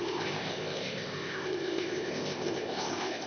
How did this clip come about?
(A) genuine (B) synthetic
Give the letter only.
B